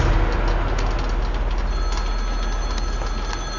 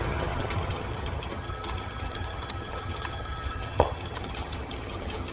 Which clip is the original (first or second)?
first